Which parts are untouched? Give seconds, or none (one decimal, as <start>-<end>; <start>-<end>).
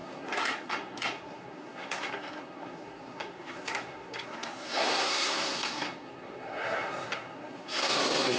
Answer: none